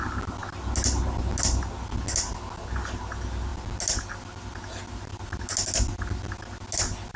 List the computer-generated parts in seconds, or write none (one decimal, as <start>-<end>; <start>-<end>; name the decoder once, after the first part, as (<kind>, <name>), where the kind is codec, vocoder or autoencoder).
none